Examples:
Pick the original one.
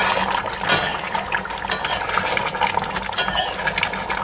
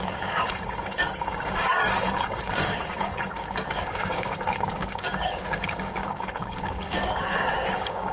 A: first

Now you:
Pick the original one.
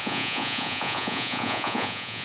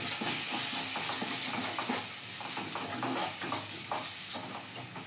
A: second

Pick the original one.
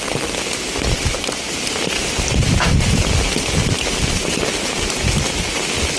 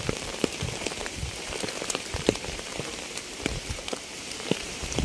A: first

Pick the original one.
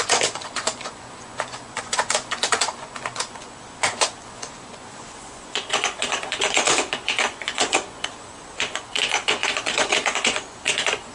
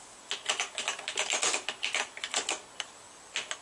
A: second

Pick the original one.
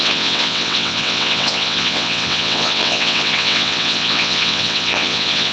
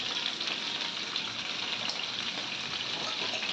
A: second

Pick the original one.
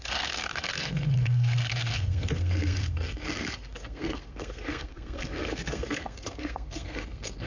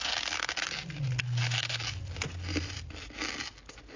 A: second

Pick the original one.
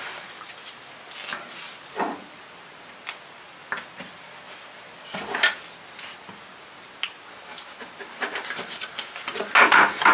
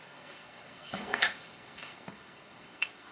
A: first